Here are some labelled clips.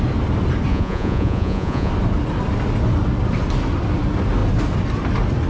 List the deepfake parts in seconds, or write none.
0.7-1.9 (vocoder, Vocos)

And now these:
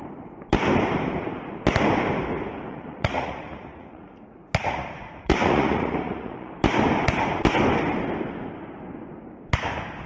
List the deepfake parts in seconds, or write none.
2.7-6.5 (vocoder, Vocos)

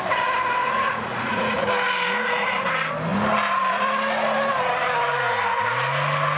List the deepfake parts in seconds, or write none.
0.6-1.6 (vocoder, Vocos)